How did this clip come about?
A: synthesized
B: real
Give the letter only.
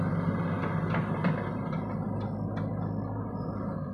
B